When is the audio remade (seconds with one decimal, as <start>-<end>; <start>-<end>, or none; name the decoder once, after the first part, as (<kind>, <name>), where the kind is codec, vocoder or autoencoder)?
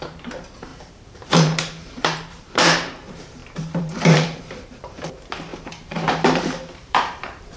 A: 0.0-7.6 (vocoder, BigVGAN v2)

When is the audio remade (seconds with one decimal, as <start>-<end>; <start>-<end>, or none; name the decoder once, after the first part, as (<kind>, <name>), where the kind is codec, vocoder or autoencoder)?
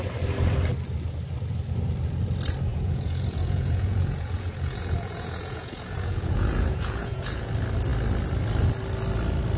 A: 2.7-7.5 (vocoder, Vocos)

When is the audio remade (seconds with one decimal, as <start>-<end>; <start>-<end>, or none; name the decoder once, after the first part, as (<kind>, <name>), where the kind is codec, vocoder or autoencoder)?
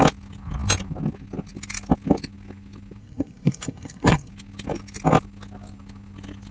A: 3.0-4.3 (codec, SNAC)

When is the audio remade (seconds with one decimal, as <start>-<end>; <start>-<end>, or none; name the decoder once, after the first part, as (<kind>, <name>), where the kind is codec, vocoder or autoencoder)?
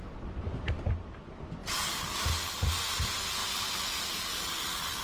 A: 1.6-2.6 (vocoder, BigVGAN v2)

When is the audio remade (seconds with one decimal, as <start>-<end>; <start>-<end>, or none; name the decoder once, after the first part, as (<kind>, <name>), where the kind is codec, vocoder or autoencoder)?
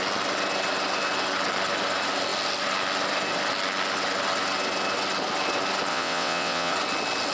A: 5.9-6.7 (vocoder, WaveNeXt)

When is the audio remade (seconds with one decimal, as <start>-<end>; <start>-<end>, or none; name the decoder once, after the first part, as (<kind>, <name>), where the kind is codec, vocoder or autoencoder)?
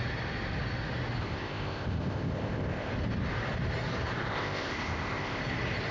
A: 1.2-2.9 (codec, ZipCodec); 4.3-5.4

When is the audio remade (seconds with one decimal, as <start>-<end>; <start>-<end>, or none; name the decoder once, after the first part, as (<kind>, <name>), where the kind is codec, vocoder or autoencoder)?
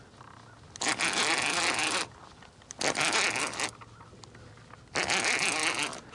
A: none